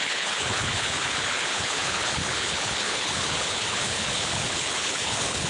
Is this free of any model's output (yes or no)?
no